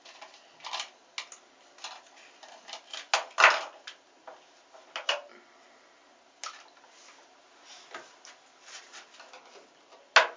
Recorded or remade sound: recorded